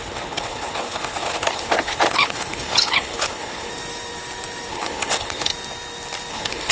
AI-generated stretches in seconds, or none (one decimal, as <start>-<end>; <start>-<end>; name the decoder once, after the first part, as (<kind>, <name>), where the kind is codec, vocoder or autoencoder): 0.0-3.7 (codec, HILCodec); 4.7-5.5; 6.3-6.7